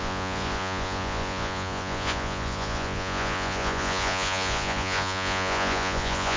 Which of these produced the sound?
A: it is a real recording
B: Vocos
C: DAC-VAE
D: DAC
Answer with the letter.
B